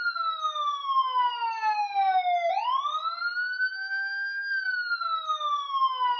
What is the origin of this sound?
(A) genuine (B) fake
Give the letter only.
A